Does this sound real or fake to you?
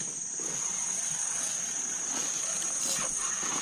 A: real